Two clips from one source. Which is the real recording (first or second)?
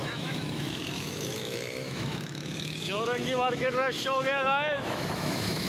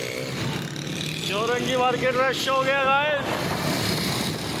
second